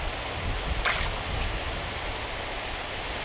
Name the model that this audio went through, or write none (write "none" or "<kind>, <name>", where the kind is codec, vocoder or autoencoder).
none